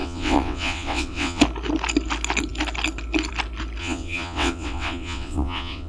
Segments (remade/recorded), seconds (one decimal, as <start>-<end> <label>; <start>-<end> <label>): 0.0-1.4 remade; 1.4-3.8 recorded; 3.8-5.9 remade